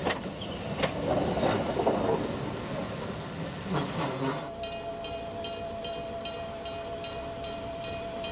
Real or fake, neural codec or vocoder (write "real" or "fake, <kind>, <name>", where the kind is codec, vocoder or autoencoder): real